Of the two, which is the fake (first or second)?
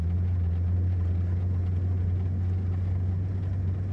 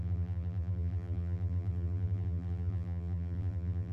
second